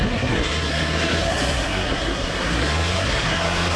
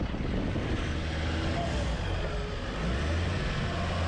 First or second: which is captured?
second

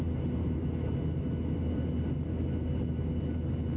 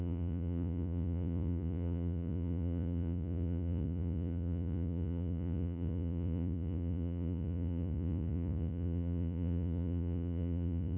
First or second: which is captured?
first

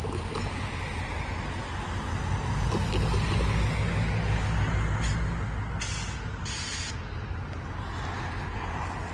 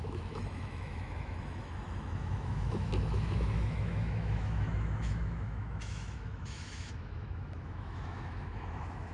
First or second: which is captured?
first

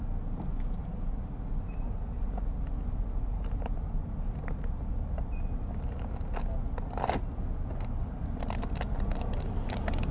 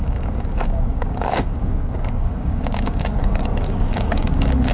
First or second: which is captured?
first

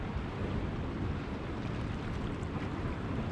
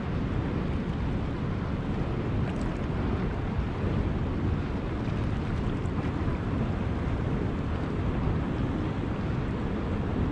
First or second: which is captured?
second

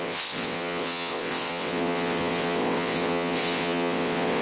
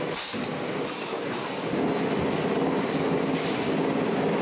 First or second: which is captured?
second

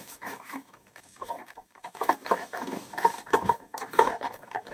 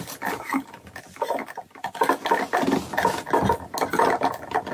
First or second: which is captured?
second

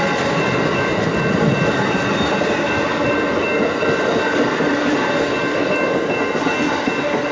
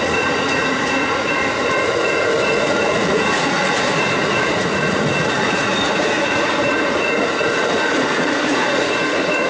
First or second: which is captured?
first